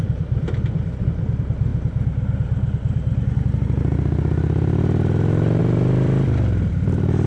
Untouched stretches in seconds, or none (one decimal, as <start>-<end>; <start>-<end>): 1.7-5.6